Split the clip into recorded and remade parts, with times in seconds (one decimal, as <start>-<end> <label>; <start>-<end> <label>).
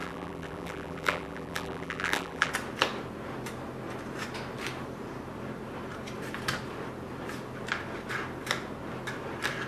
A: 0.0-2.5 remade; 2.5-9.7 recorded